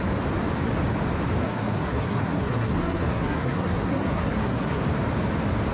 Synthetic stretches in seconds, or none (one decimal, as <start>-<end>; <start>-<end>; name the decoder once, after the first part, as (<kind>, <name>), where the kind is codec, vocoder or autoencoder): 1.4-4.8 (codec, SNAC)